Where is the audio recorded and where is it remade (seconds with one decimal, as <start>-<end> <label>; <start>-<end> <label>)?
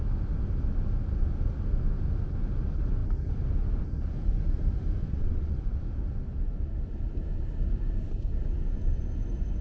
0.0-5.0 recorded; 5.0-5.8 remade; 5.8-9.6 recorded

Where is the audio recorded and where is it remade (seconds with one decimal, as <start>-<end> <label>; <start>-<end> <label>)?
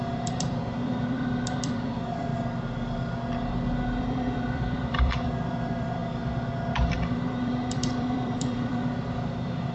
0.0-2.3 remade; 2.3-4.0 recorded; 4.0-6.0 remade; 6.0-6.7 recorded; 6.7-9.7 remade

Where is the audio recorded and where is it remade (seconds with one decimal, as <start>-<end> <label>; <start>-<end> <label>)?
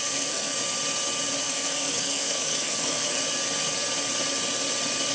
0.0-0.5 remade; 0.5-1.4 recorded; 1.4-3.2 remade; 3.2-5.1 recorded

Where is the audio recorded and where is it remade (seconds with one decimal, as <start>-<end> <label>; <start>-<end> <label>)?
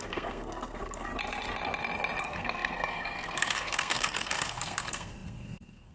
0.0-1.1 remade; 1.1-2.2 recorded; 2.2-5.9 remade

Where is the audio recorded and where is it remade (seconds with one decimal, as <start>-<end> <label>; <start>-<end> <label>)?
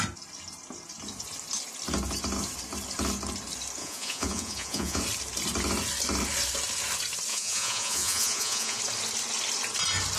0.0-3.8 recorded; 3.8-5.0 remade; 5.0-7.3 recorded; 7.3-8.8 remade; 8.8-10.2 recorded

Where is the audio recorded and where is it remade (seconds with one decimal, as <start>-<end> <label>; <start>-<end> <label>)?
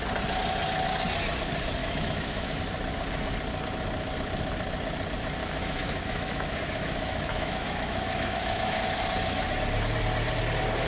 0.0-1.8 recorded; 1.8-2.6 remade; 2.6-5.4 recorded; 5.4-8.8 remade; 8.8-10.9 recorded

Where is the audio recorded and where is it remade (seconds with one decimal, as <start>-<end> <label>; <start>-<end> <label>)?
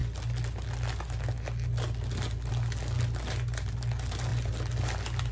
0.0-5.3 recorded